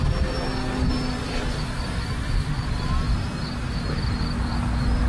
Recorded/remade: recorded